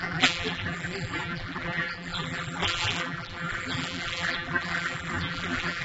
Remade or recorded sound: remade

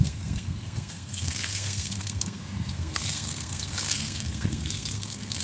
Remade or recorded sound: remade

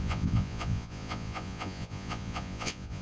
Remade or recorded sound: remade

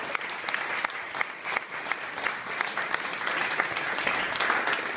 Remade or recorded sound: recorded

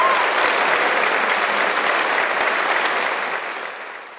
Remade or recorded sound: recorded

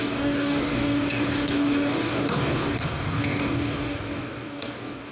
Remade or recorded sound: remade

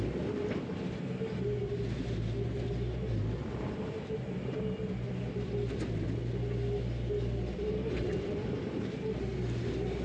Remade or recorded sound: recorded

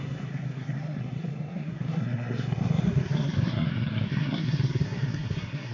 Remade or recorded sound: remade